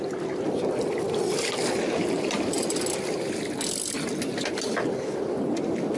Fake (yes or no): no